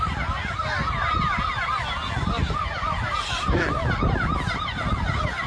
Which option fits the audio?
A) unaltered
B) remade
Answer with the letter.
A